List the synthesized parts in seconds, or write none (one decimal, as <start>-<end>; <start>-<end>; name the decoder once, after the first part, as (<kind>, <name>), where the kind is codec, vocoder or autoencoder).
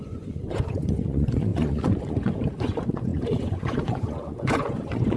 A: 0.0-5.2 (vocoder, Vocos)